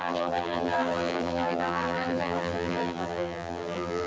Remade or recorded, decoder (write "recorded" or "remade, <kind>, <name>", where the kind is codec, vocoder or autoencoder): remade, vocoder, BigVGAN v2